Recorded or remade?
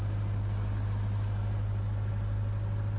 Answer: recorded